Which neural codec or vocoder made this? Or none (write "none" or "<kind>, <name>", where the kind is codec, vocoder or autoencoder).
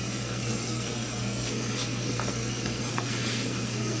codec, SNAC